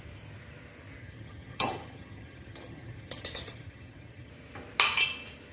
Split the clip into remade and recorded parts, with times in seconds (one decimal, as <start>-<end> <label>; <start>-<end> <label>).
0.0-1.0 recorded; 1.0-4.3 remade; 4.3-5.5 recorded